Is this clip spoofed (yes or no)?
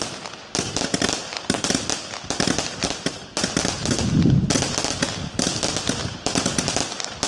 no